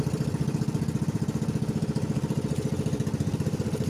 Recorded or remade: recorded